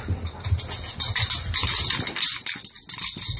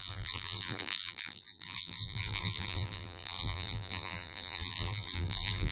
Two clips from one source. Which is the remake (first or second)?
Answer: second